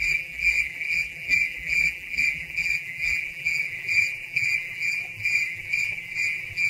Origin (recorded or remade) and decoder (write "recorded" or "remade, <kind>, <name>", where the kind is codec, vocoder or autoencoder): remade, vocoder, BigVGAN v2